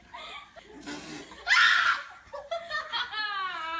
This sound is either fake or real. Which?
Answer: real